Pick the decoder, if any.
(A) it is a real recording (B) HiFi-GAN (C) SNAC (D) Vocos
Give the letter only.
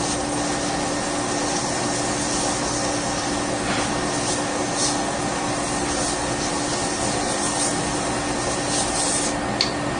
A